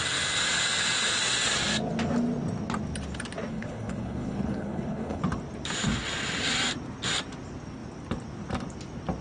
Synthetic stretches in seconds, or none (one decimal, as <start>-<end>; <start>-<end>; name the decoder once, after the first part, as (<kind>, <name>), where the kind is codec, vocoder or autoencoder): 3.5-5.2 (codec, HILCodec)